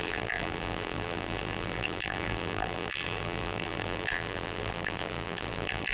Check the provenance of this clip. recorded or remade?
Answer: remade